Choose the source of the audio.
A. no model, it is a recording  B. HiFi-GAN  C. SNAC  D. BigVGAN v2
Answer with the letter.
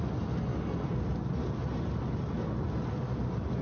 A